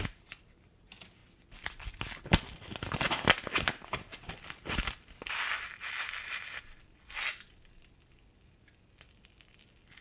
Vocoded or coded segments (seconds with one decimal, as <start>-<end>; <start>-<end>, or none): none